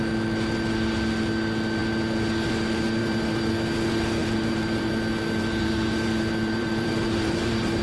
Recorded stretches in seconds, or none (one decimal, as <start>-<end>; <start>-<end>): 0.0-3.0; 3.5-4.2; 4.9-5.5